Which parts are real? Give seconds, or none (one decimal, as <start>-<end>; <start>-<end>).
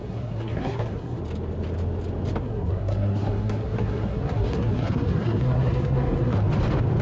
1.2-2.4; 6.4-7.0